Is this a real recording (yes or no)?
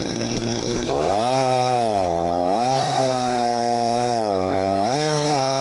no